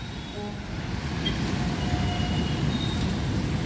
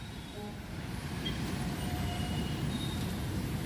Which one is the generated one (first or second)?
second